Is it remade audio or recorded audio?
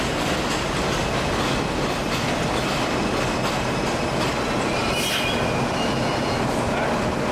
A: recorded